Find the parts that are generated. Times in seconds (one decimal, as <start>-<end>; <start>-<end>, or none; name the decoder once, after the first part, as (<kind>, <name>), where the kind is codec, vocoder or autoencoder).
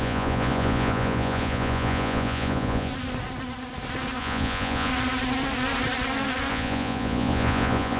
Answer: 0.0-2.9 (vocoder, Vocos); 4.2-4.9; 6.5-8.0